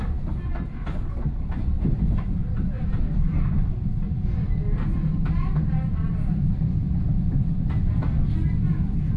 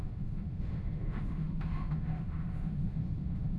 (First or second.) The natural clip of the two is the first